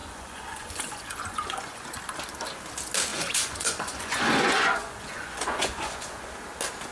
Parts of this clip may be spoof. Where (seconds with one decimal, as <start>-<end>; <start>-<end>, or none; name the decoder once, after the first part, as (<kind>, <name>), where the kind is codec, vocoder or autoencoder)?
0.0-2.0 (vocoder, Vocos); 3.1-6.3